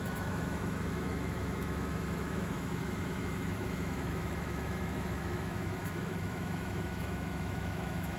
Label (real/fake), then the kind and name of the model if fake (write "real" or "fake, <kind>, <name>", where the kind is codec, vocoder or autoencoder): fake, autoencoder, DAC-VAE